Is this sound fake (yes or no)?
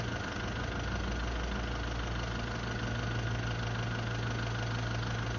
no